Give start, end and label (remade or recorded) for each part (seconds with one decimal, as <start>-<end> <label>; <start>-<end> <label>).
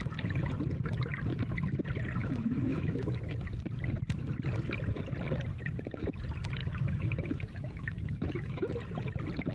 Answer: 0.0-2.2 recorded; 2.2-3.2 remade; 3.2-6.6 recorded; 6.6-8.7 remade; 8.7-9.5 recorded